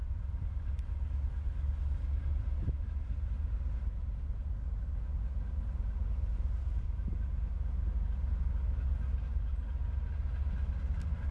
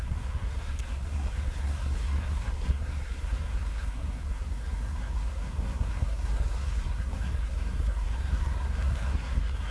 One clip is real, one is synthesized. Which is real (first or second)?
first